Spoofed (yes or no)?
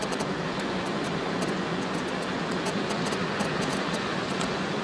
yes